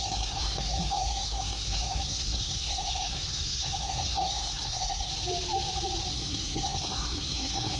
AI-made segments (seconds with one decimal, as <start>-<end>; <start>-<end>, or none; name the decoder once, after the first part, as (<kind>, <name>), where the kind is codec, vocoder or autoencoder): 0.0-5.1 (codec, SNAC); 6.1-7.8